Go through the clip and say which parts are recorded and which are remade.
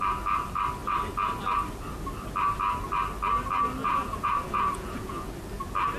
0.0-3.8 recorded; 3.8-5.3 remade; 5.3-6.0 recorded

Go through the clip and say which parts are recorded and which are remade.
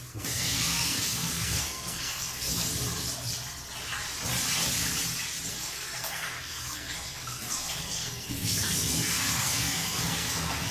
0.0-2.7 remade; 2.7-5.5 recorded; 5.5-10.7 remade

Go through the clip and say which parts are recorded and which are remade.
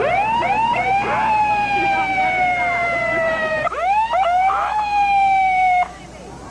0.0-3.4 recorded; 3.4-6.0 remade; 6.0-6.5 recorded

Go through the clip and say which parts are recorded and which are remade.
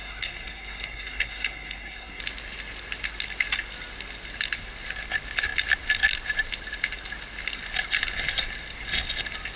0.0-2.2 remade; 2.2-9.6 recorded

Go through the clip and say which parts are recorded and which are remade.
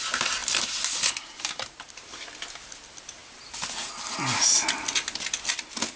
0.0-6.0 recorded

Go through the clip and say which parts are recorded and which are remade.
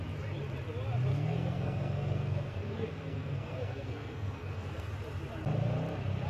0.0-1.1 recorded; 1.1-4.9 remade; 4.9-6.3 recorded